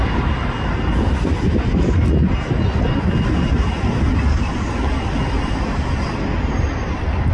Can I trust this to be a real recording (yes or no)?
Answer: yes